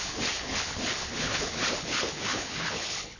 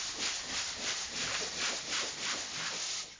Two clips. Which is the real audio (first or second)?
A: second